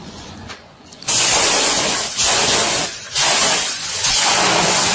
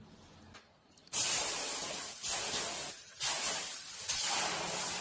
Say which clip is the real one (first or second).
second